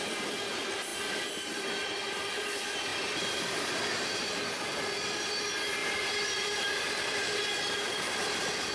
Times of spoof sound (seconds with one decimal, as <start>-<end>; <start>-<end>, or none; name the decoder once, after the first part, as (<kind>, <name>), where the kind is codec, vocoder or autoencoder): 2.9-4.3 (vocoder, BigVGAN v2); 5.8-7.4